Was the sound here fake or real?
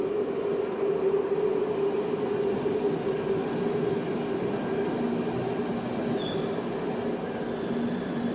real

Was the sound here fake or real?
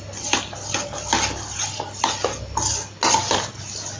real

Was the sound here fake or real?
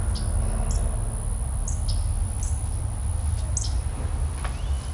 real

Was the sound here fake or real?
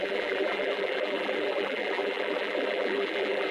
fake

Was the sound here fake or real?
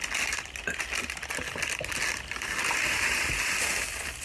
real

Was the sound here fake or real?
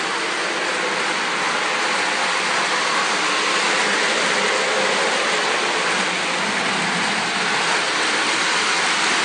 real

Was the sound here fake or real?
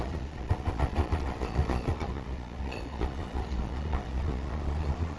fake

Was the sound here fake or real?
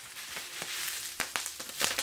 real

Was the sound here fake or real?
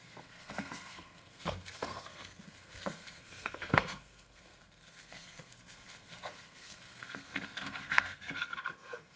fake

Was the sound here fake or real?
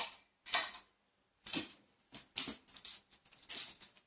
real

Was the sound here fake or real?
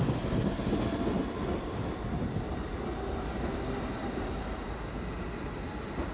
real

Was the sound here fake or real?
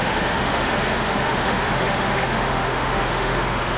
fake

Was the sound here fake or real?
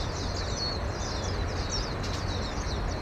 real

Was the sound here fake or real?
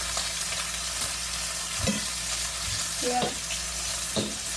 real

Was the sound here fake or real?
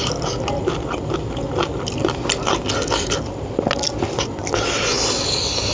real